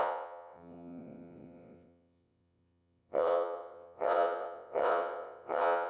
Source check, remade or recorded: remade